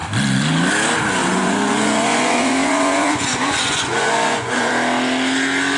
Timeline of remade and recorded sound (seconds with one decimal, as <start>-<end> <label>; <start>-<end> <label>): 0.0-1.2 recorded; 1.2-4.7 remade; 4.7-5.8 recorded